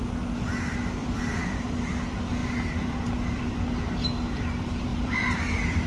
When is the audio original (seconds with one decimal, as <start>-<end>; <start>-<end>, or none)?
0.0-1.0; 1.9-4.9